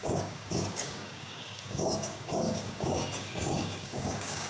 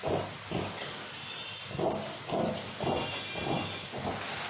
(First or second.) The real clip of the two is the second